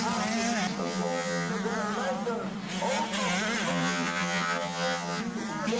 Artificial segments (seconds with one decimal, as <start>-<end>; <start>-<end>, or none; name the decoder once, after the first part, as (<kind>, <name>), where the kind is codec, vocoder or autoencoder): 0.8-1.5 (vocoder, HiFi-GAN); 3.7-5.2